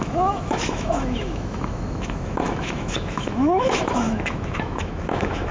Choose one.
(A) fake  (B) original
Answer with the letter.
A